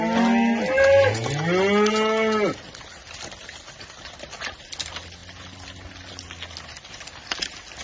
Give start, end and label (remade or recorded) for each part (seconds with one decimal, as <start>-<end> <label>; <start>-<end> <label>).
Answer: 0.0-7.8 recorded